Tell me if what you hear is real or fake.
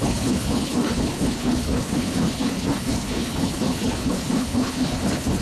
fake